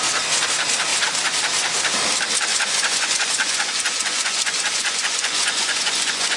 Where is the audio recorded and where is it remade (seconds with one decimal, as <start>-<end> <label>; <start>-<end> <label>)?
0.0-2.5 recorded; 2.5-6.4 remade